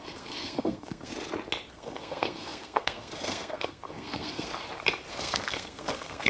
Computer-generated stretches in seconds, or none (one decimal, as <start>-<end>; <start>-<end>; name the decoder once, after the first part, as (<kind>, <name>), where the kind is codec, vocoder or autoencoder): 0.0-1.1 (codec, SNAC); 1.7-4.5; 5.1-6.3